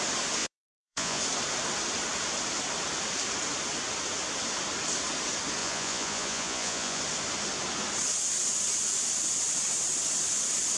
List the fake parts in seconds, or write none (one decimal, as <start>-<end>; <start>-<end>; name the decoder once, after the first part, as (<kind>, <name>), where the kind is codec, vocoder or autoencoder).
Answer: 0.4-1.2 (vocoder, Vocos); 5.6-7.0